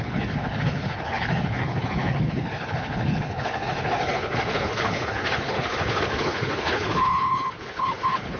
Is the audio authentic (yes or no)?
no